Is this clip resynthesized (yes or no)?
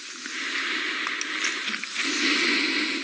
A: no